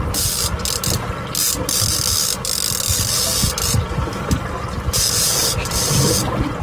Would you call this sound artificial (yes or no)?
no